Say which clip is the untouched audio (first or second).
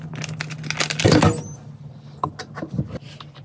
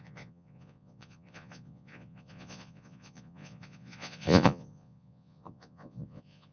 first